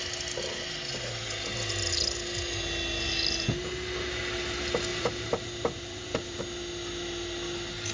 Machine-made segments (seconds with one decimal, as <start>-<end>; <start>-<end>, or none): 4.9-6.4